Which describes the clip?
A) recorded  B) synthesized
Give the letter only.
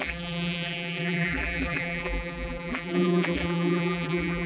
B